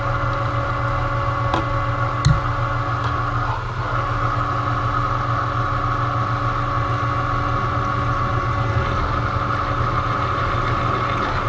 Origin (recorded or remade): recorded